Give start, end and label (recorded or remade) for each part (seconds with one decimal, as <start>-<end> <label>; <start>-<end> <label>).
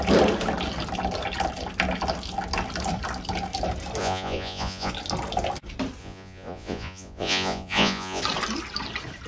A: 0.0-4.0 recorded; 4.0-4.9 remade; 4.9-6.0 recorded; 6.0-8.2 remade; 8.2-9.3 recorded